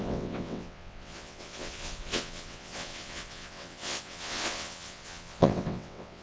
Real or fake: fake